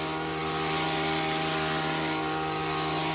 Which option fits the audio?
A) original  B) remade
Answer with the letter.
A